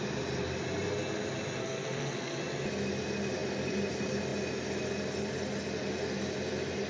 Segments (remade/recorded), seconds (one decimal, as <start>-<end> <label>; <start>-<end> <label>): 0.0-1.6 recorded; 1.6-2.4 remade; 2.4-6.9 recorded